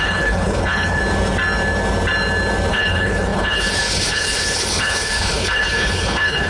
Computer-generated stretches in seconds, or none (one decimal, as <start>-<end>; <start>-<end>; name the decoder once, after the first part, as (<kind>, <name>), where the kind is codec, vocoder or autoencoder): 0.0-1.0 (codec, HILCodec); 2.7-6.5